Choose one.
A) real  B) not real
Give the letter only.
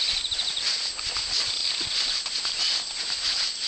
A